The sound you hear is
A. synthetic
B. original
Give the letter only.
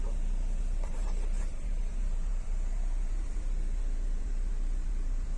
A